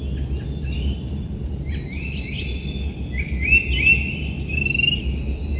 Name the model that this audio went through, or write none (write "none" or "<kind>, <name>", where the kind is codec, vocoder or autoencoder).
none